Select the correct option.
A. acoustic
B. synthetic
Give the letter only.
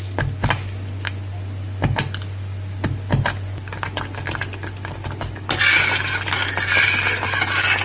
B